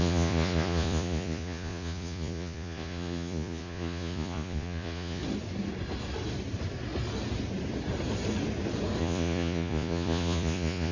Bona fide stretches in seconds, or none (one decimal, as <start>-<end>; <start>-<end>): 5.2-9.0

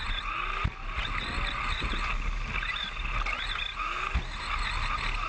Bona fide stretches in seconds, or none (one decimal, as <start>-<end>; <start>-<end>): 0.0-5.3

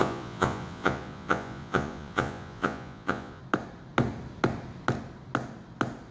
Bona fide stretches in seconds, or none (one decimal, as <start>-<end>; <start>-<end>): 3.4-6.1

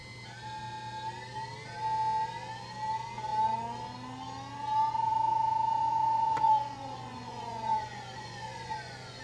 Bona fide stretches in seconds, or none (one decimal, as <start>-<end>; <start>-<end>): 0.0-5.7